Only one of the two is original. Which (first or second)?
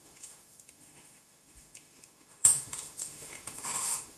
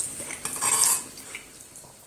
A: second